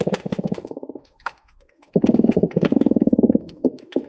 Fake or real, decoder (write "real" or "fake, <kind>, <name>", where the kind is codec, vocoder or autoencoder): fake, autoencoder, DAC-VAE